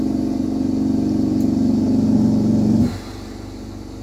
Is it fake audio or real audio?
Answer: real